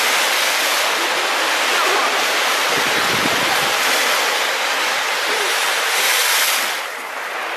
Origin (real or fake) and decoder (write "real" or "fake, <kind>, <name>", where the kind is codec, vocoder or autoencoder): real